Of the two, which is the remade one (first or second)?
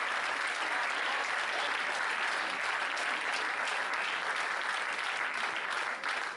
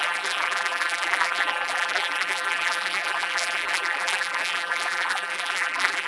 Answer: second